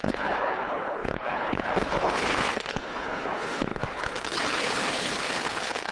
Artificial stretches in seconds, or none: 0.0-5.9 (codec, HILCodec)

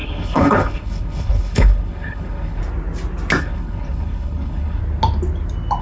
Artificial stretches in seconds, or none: 0.0-2.6 (codec, HILCodec); 3.4-4.8

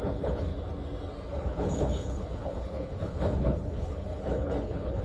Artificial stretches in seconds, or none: 0.0-0.5 (codec, HILCodec); 1.3-5.0

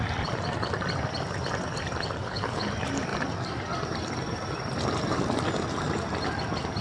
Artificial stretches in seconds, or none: 2.2-2.7 (codec, HILCodec)

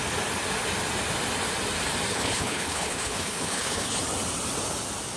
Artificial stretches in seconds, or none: 2.1-4.0 (codec, HILCodec)

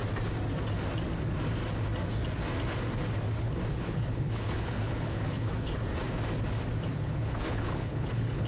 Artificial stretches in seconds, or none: 3.7-5.8 (codec, HILCodec); 7.0-8.5